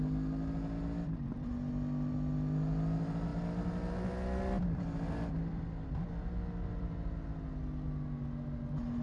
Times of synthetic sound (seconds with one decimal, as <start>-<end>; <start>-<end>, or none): none